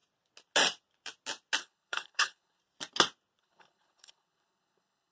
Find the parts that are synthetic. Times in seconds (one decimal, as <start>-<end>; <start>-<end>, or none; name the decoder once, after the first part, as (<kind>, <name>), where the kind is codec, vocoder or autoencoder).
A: 1.6-2.6 (codec, HILCodec); 3.4-5.1